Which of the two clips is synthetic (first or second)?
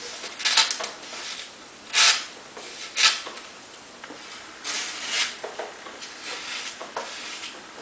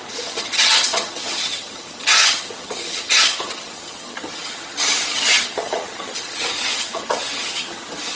second